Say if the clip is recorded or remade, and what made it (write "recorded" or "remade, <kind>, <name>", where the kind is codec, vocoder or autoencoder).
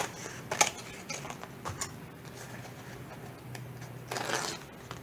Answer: recorded